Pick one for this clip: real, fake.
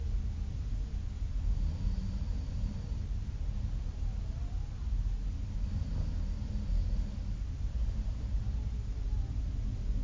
real